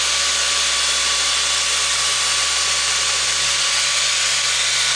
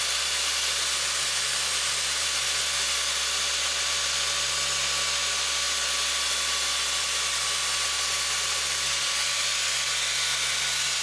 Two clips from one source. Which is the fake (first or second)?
first